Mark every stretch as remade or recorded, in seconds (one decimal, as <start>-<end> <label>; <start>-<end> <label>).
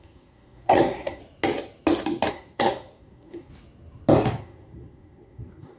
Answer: 0.0-1.2 remade; 1.2-2.3 recorded; 2.3-3.5 remade; 3.5-4.4 recorded; 4.4-5.8 remade